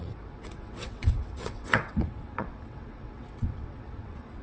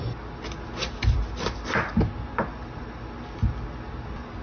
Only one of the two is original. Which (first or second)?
second